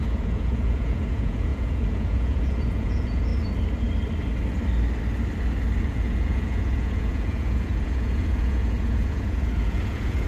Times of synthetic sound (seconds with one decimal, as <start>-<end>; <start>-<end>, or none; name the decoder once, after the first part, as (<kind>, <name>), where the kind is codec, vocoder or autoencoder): 0.0-3.3 (vocoder, Vocos); 5.8-10.3